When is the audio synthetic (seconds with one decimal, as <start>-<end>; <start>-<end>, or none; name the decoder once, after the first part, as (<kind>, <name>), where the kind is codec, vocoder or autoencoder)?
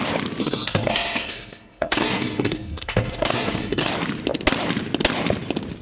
0.4-3.9 (codec, SNAC)